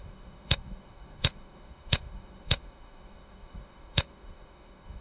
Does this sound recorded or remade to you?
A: remade